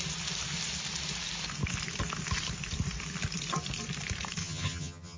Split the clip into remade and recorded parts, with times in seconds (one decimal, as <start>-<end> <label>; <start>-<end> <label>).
0.0-4.4 recorded; 4.4-5.2 remade